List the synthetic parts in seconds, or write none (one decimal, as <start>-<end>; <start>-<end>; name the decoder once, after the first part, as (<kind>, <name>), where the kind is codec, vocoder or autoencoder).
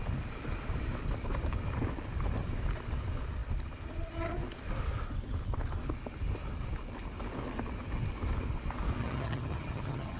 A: 9.0-10.2 (vocoder, HiFi-GAN)